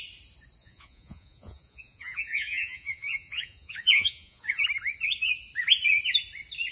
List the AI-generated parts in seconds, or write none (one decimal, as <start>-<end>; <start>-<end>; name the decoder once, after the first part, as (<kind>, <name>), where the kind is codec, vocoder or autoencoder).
0.6-4.6 (vocoder, Vocos)